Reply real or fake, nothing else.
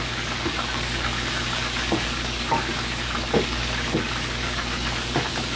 fake